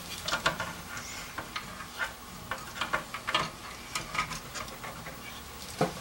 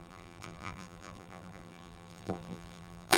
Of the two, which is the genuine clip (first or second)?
first